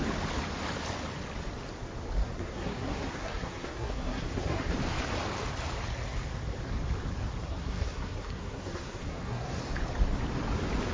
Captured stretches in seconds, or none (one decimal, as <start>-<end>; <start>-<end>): 0.0-2.2; 4.7-7.4; 9.6-10.9